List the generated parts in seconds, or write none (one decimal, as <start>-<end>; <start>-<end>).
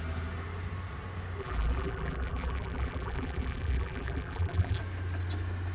1.4-4.8